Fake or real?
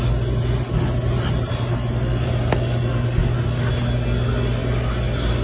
real